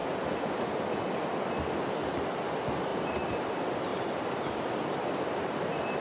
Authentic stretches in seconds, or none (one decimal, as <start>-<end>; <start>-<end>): 1.2-2.9; 3.5-3.9; 5.0-6.0